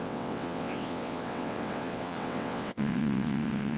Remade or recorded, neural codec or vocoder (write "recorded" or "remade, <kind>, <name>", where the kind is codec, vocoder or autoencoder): remade, vocoder, WaveNeXt